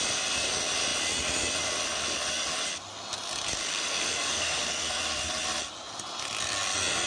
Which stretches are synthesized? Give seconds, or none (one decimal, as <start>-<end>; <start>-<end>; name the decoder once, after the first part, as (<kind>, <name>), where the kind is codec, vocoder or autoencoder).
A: 3.7-5.0 (codec, SNAC)